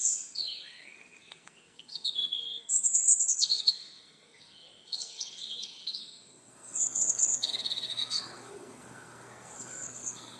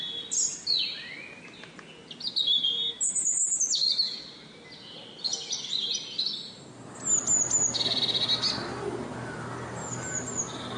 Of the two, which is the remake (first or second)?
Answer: first